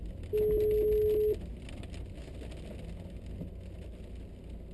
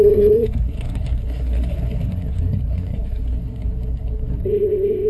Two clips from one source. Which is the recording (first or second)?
first